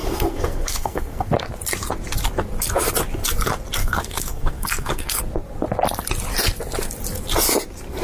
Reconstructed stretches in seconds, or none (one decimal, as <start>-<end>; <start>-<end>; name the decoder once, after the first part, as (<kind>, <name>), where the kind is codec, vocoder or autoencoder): 0.0-1.3 (codec, SNAC); 3.8-5.2